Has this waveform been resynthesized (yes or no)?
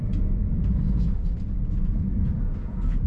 yes